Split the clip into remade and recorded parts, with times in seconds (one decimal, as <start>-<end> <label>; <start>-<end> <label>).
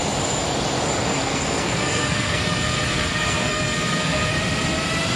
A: 0.0-1.2 recorded; 1.2-4.3 remade; 4.3-5.2 recorded